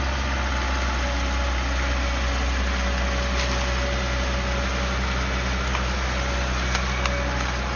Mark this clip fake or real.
real